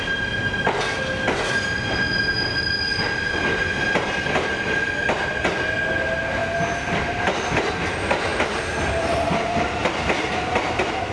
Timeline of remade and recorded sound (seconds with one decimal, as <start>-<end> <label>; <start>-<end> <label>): 0.0-11.1 recorded